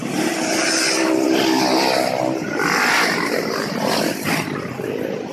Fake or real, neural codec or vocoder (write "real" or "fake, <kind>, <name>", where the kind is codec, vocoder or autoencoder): fake, vocoder, BigVGAN v2